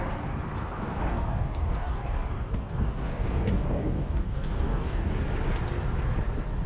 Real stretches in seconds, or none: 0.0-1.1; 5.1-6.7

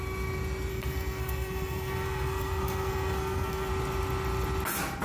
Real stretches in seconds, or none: 0.0-0.7; 3.7-5.0

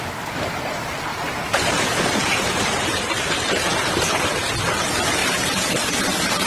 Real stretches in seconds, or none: 0.0-1.1; 3.1-5.2

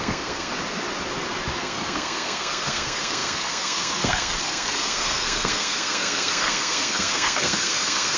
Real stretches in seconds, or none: 0.5-1.6

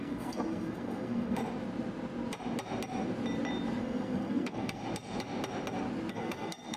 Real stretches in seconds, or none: 1.4-3.8; 4.8-6.1

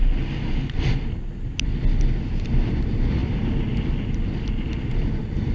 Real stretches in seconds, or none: 0.0-5.5

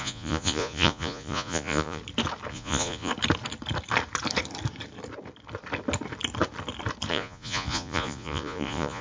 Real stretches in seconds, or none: 2.0-2.5; 3.1-7.1